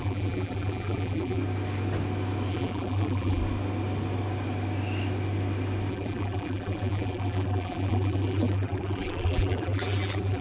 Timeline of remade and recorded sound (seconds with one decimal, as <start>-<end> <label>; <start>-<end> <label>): 0.0-1.4 remade; 1.4-2.5 recorded; 2.5-3.4 remade; 3.4-5.9 recorded; 5.9-10.4 remade